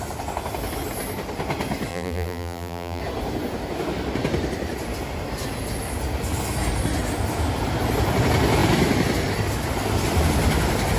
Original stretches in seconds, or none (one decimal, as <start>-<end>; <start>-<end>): 0.0-1.9; 3.0-11.0